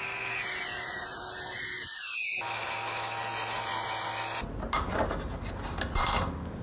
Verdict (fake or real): real